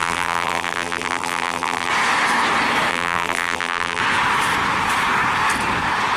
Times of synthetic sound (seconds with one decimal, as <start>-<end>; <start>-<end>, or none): 0.0-1.9; 2.9-4.0